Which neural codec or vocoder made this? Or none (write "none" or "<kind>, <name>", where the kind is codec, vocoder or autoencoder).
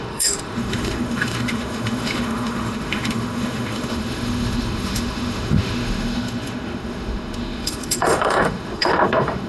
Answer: autoencoder, DAC-VAE